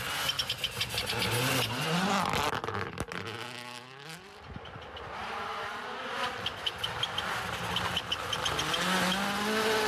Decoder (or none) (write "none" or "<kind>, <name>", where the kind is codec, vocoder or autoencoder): none